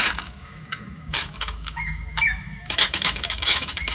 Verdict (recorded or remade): remade